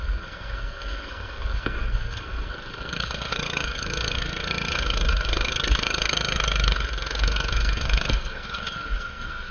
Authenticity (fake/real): fake